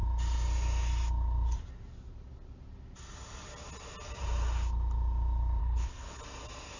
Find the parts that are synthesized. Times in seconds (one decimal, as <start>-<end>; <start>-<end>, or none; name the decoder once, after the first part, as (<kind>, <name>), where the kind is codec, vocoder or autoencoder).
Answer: 5.6-6.2 (codec, HILCodec)